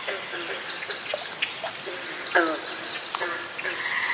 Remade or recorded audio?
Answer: recorded